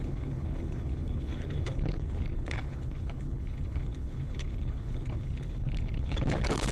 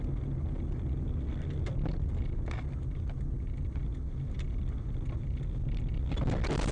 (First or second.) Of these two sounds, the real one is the second